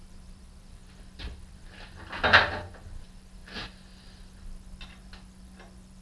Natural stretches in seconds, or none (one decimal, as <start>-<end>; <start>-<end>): 0.8-3.0; 3.4-6.0